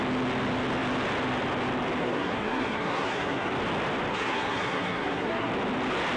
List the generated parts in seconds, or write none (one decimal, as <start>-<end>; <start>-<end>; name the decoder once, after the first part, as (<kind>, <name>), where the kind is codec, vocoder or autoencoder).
2.0-3.5 (codec, SNAC); 4.1-5.5